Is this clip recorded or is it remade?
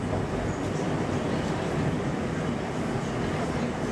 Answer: recorded